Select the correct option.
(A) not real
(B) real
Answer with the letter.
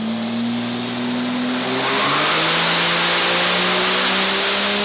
B